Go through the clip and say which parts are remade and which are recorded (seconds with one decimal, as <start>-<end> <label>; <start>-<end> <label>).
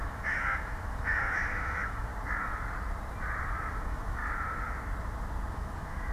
0.0-2.1 remade; 2.1-3.7 recorded; 3.7-4.2 remade; 4.2-5.5 recorded; 5.5-6.1 remade